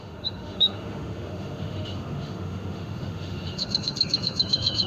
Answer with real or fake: fake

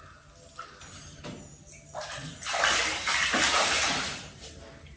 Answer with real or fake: real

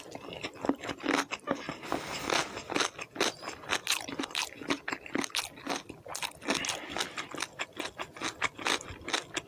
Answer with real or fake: real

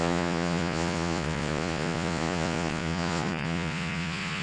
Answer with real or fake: fake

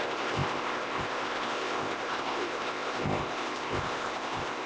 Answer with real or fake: fake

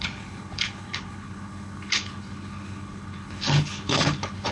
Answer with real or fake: fake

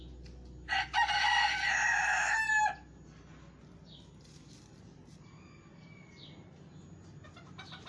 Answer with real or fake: real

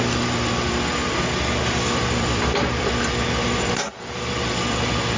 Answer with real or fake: fake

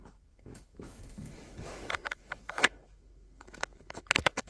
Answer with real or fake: fake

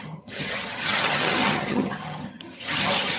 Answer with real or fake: fake